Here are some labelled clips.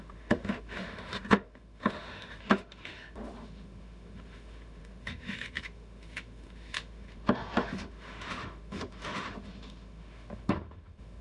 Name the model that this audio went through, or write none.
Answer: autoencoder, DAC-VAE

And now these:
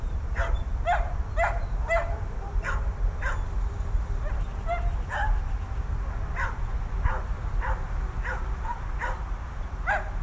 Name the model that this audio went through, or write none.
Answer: none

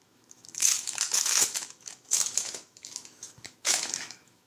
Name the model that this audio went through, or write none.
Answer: autoencoder, DAC-VAE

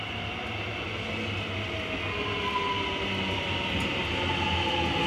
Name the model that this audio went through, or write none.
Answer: none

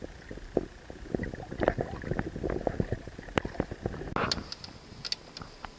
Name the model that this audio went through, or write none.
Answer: none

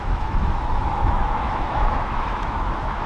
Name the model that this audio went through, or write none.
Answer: autoencoder, DAC-VAE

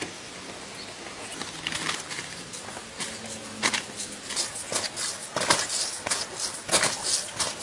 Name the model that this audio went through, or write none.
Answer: none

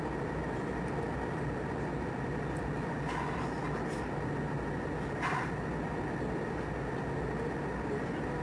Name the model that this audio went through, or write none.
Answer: none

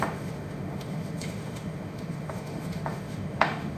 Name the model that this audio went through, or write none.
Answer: autoencoder, DAC-VAE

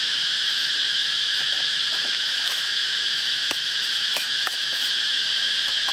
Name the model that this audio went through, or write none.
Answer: autoencoder, DAC-VAE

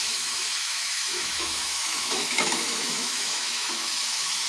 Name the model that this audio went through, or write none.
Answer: autoencoder, DAC-VAE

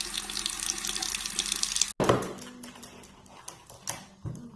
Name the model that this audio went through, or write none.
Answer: none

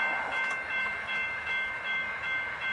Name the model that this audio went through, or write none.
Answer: autoencoder, DAC-VAE